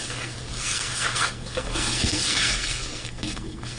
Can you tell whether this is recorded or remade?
remade